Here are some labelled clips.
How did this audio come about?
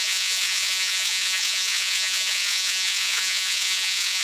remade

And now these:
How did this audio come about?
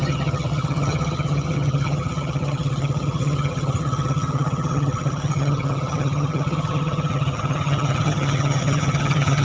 remade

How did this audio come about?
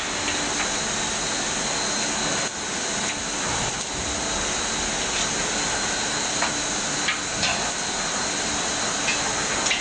recorded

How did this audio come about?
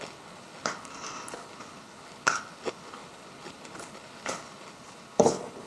remade